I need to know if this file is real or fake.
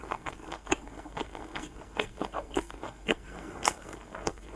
fake